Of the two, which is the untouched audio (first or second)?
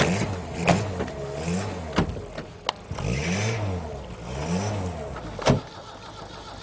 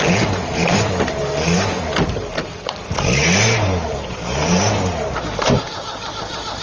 first